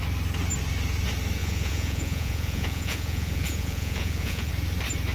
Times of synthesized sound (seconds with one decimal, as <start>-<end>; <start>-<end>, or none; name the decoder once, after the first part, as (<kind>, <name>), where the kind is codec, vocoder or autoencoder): 1.4-4.5 (vocoder, Vocos)